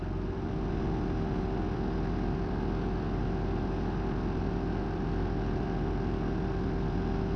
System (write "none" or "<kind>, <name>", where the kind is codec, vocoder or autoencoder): none